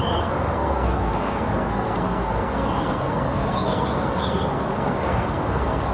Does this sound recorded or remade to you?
remade